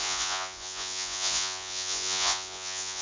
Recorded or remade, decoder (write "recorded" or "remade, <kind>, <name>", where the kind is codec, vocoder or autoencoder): remade, vocoder, Vocos